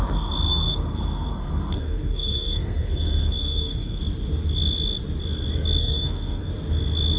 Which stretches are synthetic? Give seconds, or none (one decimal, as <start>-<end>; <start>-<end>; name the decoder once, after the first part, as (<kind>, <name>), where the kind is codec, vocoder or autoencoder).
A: 0.5-4.0 (codec, SNAC); 5.8-6.5